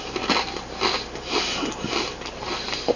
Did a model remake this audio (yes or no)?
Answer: no